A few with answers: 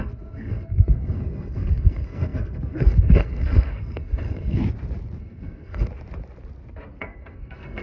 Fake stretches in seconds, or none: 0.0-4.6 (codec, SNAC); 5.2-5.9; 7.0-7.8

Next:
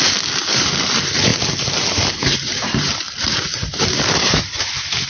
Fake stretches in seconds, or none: 0.0-5.1 (vocoder, BigVGAN v2)

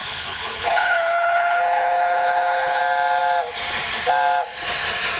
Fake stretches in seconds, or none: 0.0-2.8 (codec, HILCodec)

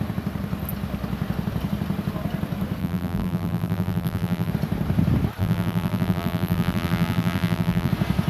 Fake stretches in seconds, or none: 2.8-4.5 (vocoder, BigVGAN v2); 5.4-7.9

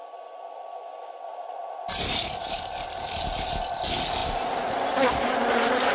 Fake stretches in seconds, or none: none

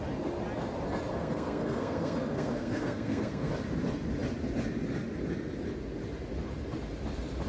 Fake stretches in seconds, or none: 1.2-3.5 (codec, SNAC)